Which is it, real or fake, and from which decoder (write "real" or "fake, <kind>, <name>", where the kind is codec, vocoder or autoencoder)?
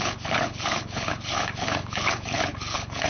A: fake, codec, HILCodec